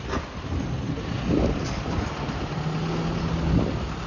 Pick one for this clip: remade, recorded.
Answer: recorded